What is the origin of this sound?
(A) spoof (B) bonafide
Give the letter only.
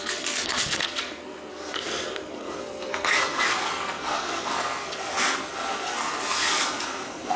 A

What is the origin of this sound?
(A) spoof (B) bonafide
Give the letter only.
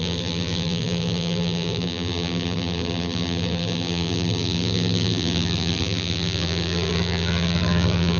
A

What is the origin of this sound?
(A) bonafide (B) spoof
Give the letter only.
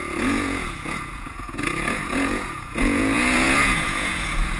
B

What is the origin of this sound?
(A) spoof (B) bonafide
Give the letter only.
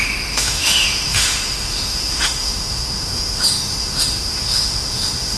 A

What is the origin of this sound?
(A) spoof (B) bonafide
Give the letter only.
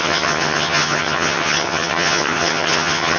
A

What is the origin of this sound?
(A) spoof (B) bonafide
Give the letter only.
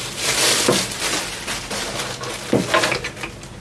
B